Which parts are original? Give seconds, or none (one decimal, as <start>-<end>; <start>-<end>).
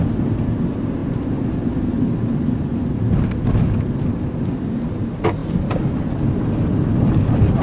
0.0-7.6